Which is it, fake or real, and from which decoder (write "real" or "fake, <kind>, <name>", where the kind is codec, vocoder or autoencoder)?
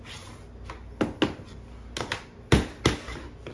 real